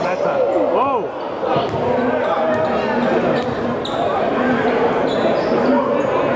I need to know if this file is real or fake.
real